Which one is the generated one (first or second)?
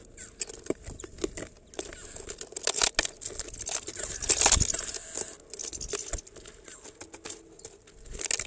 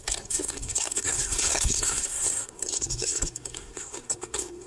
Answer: second